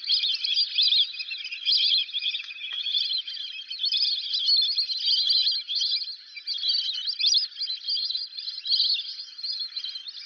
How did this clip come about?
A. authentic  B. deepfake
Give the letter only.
A